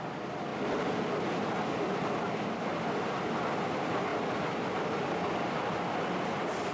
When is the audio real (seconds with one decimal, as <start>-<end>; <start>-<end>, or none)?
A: 0.0-6.7